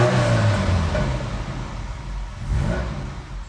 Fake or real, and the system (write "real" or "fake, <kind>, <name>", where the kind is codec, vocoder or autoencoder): real